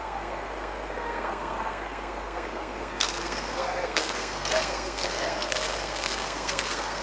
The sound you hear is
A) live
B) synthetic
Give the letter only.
B